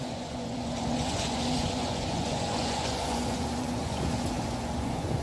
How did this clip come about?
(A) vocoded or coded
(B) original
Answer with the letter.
A